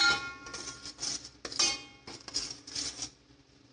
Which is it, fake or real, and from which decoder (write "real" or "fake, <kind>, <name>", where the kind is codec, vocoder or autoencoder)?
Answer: real